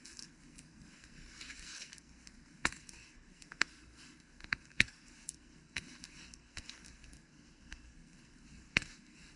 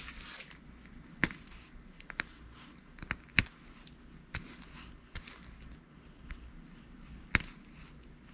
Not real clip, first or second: first